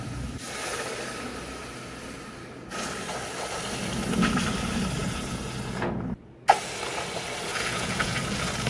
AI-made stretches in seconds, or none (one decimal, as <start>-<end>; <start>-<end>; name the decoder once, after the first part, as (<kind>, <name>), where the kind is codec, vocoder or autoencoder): 7.5-8.2 (vocoder, Vocos)

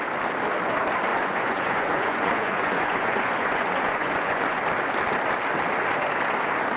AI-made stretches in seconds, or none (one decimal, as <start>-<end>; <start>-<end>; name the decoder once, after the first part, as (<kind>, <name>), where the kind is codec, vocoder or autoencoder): 1.1-4.6 (vocoder, Vocos)